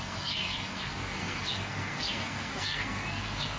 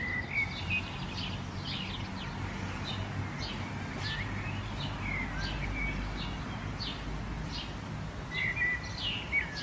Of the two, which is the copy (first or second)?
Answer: first